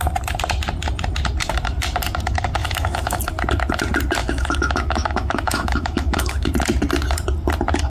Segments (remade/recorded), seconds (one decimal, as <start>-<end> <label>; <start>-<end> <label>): 0.0-2.6 recorded; 2.6-3.2 remade; 3.2-4.2 recorded; 4.2-6.5 remade; 6.5-7.9 recorded